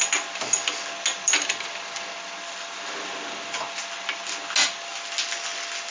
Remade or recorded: recorded